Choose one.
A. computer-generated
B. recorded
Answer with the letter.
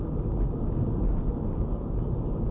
B